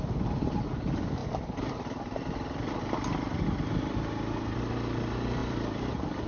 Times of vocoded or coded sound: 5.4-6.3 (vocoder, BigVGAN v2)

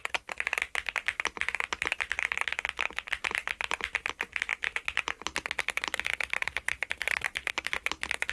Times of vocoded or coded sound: 6.1-7.5 (vocoder, BigVGAN v2)